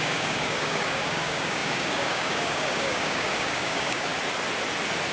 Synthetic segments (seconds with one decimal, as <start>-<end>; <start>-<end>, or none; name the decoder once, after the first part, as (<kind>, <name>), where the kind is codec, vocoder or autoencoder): 0.0-4.1 (codec, DAC)

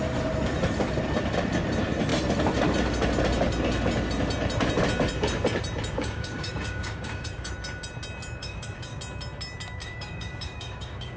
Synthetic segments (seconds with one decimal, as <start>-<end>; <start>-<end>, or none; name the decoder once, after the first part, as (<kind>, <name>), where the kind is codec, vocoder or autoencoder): 6.0-7.5 (codec, DAC); 8.4-9.0; 9.8-11.2

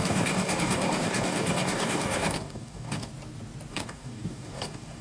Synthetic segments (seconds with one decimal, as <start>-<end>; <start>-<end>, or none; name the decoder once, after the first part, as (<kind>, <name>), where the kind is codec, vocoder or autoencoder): 0.0-3.1 (codec, DAC); 3.7-5.0

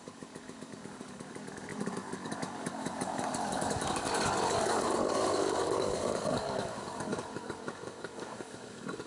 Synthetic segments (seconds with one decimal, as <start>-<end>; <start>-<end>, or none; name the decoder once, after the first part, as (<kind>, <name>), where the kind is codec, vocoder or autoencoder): 0.0-9.1 (codec, DAC)